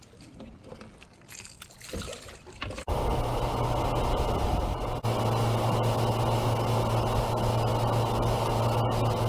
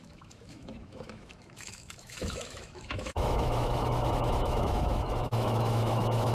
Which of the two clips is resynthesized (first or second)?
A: second